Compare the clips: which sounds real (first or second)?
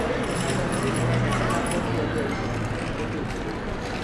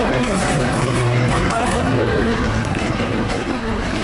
first